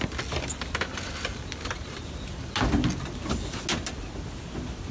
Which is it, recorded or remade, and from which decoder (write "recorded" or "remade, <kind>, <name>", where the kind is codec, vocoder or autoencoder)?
recorded